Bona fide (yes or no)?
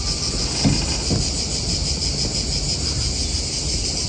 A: yes